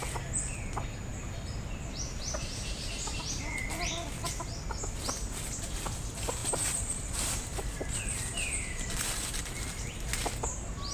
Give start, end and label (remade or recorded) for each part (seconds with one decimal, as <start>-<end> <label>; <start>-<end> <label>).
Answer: 0.0-6.4 recorded; 6.4-9.4 remade; 9.4-10.9 recorded